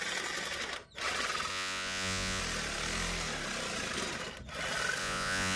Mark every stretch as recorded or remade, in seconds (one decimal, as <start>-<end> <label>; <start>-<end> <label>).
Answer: 0.0-1.5 recorded; 1.5-2.4 remade; 2.4-5.0 recorded; 5.0-5.6 remade